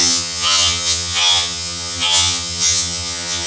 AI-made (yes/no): yes